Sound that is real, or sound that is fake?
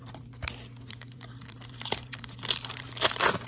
fake